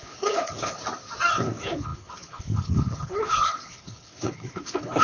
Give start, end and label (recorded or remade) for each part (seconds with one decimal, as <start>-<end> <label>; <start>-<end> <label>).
0.0-0.8 remade; 0.8-1.3 recorded; 1.3-5.0 remade